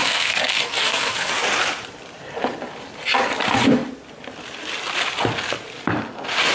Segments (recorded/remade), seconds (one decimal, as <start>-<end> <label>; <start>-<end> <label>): 0.0-1.3 remade; 1.3-6.5 recorded